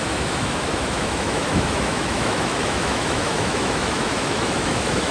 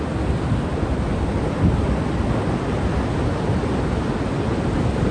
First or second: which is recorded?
second